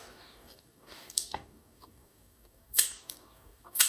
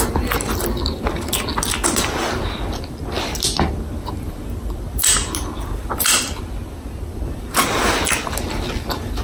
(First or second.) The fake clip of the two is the first